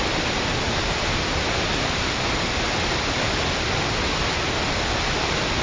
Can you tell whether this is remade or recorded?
recorded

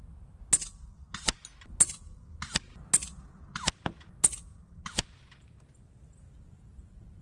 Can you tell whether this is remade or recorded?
recorded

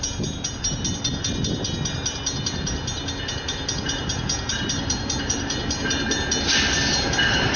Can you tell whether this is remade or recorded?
recorded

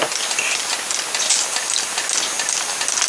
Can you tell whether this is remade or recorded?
recorded